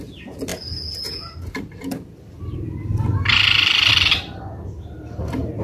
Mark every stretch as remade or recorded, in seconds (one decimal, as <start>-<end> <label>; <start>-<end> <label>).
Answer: 0.0-5.6 remade

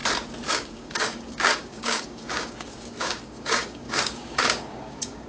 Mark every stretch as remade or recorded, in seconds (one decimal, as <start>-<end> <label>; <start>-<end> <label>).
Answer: 0.0-0.5 recorded; 0.5-5.3 remade